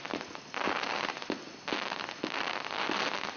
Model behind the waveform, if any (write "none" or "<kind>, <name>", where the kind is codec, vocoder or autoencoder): vocoder, BigVGAN v2